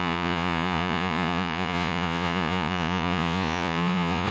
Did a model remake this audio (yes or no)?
yes